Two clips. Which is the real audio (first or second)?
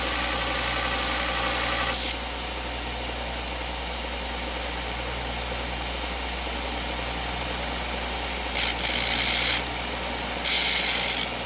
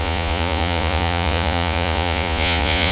first